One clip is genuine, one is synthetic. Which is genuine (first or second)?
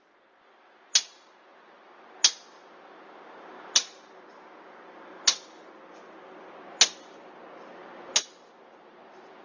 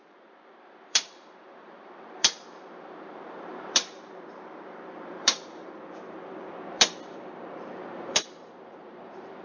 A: first